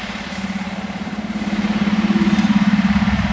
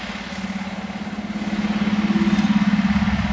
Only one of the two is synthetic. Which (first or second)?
first